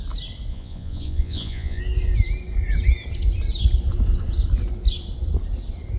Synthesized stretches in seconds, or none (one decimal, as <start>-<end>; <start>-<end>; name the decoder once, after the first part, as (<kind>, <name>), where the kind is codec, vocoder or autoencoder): 0.5-1.8 (vocoder, Vocos)